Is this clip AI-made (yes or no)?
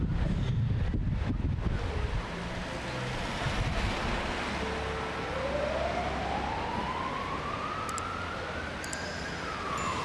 no